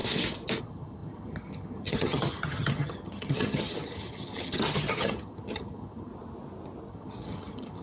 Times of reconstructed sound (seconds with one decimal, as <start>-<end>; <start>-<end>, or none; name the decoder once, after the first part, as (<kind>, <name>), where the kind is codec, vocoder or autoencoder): 0.6-6.1 (vocoder, HiFi-GAN); 6.9-7.8